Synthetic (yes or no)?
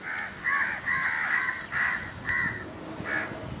no